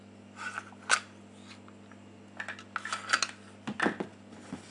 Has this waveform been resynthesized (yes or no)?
no